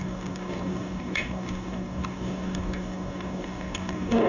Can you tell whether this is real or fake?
fake